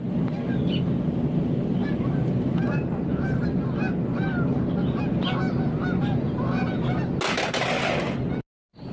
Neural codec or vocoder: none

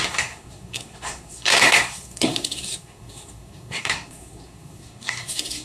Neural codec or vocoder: codec, SNAC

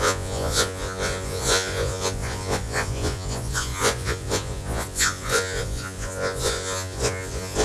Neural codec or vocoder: vocoder, Vocos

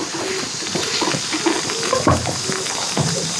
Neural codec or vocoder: none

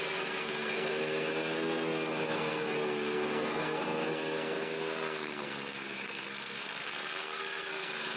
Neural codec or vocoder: codec, SNAC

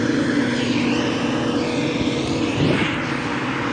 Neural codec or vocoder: none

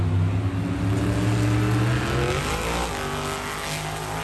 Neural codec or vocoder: none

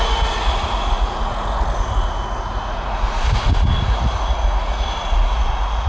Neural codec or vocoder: vocoder, Vocos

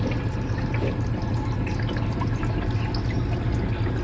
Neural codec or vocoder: none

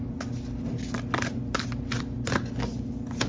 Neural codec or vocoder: none